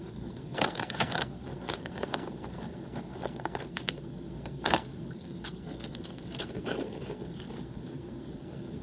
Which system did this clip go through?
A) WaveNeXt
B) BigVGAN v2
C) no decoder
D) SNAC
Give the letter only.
D